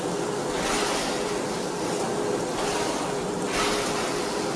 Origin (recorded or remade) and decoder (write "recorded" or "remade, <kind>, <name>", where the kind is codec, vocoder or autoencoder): recorded